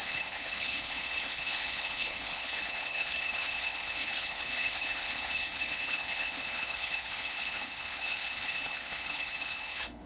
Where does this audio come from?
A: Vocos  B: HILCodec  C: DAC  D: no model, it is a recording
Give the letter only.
B